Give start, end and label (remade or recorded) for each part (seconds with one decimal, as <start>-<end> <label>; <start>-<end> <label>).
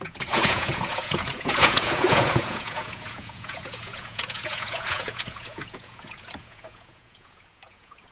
0.0-8.1 remade